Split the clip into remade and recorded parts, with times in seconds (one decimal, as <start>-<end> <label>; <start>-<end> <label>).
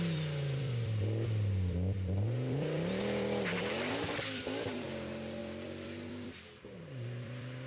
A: 0.0-7.7 remade